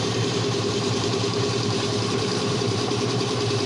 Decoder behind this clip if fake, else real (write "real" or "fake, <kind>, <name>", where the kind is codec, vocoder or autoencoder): fake, vocoder, BigVGAN v2